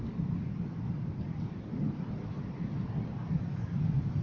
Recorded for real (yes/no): yes